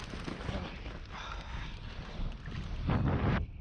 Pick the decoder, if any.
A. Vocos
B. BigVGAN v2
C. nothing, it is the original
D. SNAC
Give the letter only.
C